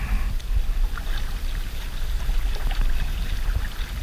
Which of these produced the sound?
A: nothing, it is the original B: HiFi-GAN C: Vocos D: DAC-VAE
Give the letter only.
A